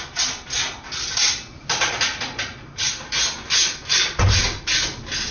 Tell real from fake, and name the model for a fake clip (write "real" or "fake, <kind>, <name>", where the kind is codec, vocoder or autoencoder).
real